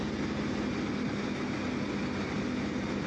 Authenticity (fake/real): real